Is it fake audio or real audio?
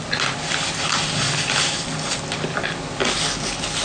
real